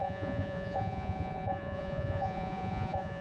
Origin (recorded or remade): remade